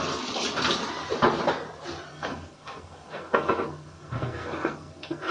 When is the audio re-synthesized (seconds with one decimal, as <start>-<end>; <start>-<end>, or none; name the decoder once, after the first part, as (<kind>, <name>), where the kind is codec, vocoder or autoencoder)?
2.1-5.3 (codec, SNAC)